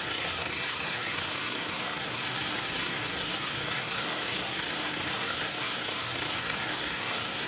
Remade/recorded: remade